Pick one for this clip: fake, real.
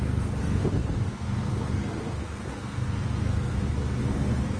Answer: fake